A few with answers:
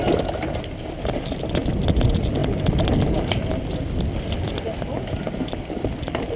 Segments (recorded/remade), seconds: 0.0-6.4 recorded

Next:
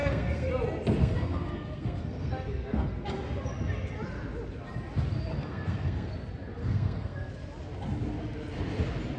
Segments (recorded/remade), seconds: 0.0-0.5 remade; 0.5-1.0 recorded; 1.0-2.9 remade; 2.9-5.3 recorded; 5.3-6.1 remade; 6.1-6.6 recorded; 6.6-7.3 remade; 7.3-9.2 recorded